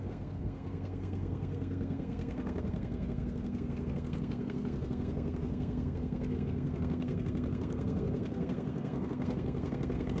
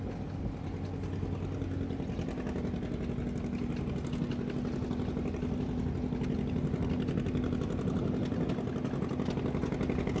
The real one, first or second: second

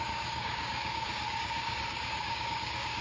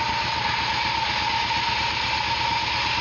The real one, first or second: second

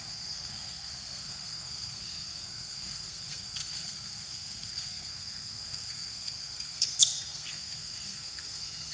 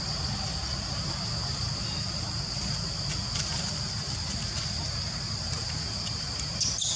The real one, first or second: second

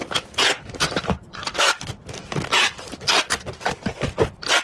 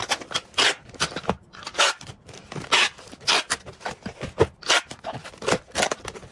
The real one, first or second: second